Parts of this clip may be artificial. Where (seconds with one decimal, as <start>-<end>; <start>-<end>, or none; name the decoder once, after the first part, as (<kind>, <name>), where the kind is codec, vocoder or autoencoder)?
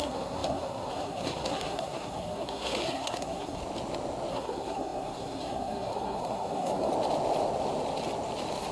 0.0-3.6 (codec, SNAC); 4.3-6.9